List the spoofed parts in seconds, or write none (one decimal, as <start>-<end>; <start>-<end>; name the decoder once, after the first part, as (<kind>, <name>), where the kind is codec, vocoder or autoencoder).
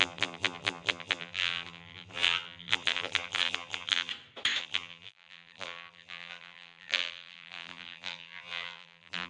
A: 0.0-4.1 (vocoder, BigVGAN v2); 4.6-9.3